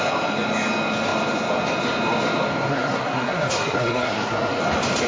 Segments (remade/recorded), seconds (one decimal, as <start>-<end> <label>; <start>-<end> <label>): 0.0-2.7 recorded; 2.7-4.6 remade; 4.6-5.1 recorded